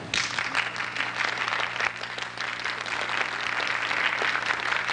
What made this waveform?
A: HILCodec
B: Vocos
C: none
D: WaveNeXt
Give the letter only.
C